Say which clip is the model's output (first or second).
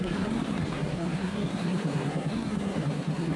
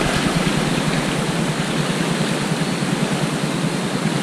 first